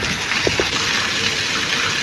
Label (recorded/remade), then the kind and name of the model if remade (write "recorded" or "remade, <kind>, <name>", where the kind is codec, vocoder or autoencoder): recorded